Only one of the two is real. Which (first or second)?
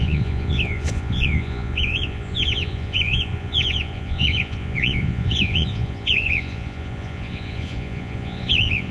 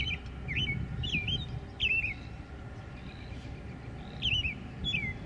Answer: second